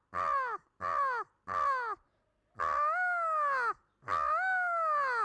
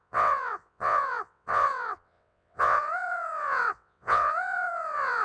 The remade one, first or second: second